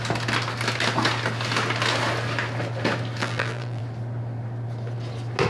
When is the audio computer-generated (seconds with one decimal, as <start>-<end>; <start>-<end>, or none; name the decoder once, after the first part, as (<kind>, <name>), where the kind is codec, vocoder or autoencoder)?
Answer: 3.2-3.8 (vocoder, BigVGAN v2)